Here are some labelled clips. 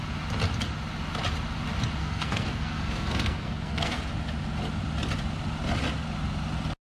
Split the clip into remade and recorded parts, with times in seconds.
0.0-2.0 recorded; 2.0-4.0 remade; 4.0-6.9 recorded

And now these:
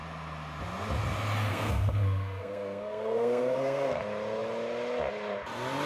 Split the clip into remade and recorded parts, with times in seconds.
0.0-1.5 recorded; 1.5-4.0 remade; 4.0-5.9 recorded

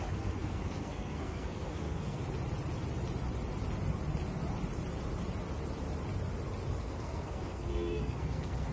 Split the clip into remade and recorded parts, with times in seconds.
0.0-2.2 remade; 2.2-6.8 recorded; 6.8-8.7 remade

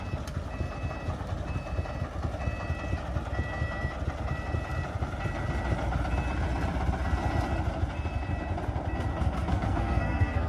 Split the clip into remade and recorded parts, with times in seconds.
0.0-9.1 recorded; 9.1-10.5 remade

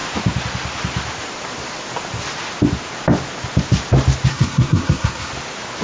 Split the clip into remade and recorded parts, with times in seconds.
0.0-4.3 recorded; 4.3-5.3 remade; 5.3-5.8 recorded

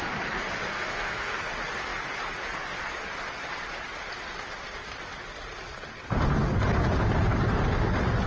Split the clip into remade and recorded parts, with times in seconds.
0.0-0.7 recorded; 0.7-1.4 remade; 1.4-8.3 recorded